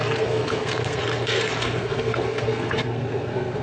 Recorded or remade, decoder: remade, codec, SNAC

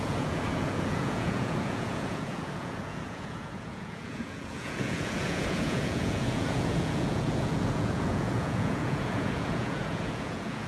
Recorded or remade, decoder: remade, vocoder, Vocos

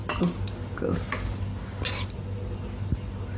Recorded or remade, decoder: recorded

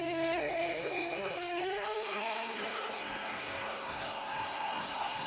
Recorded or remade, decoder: remade, codec, SNAC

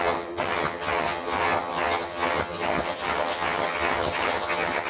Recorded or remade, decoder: remade, vocoder, HiFi-GAN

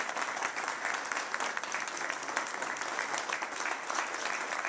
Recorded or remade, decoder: recorded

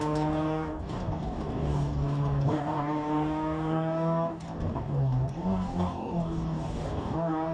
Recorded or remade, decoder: remade, codec, DAC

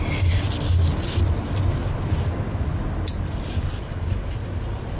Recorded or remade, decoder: recorded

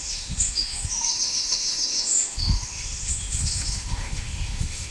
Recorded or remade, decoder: remade, autoencoder, DAC-VAE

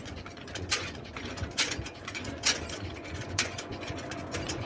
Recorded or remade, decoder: remade, vocoder, Vocos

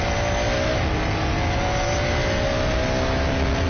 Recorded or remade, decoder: recorded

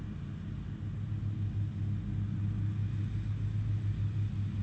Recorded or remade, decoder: recorded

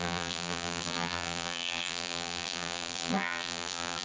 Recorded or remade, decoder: remade, vocoder, BigVGAN v2